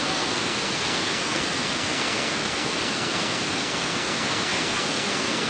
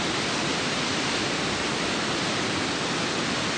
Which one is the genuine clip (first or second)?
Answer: second